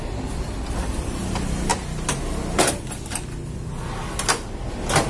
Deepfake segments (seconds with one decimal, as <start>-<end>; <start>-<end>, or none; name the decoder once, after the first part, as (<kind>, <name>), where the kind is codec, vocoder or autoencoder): none